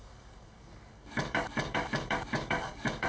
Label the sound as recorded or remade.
remade